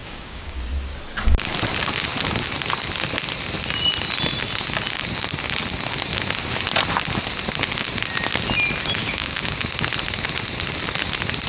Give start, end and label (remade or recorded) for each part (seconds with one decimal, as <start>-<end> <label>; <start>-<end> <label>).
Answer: 0.0-0.6 remade; 0.6-9.0 recorded; 9.0-9.6 remade; 9.6-11.5 recorded